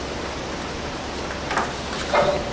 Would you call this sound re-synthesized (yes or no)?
no